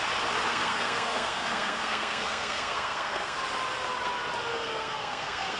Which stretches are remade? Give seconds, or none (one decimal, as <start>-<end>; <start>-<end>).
0.5-3.4; 4.5-5.6